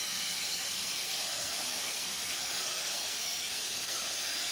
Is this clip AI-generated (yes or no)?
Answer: yes